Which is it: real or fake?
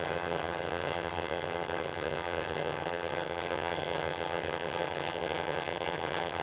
fake